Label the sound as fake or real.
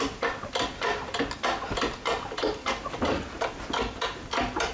real